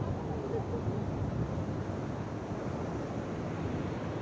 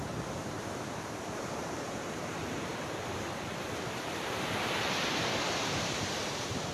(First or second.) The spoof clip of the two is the second